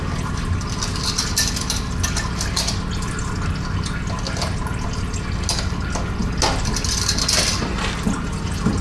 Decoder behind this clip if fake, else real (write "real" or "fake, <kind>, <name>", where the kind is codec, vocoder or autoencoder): real